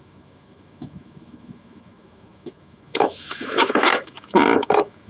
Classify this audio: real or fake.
fake